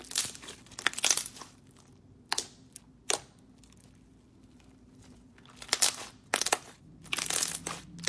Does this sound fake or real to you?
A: real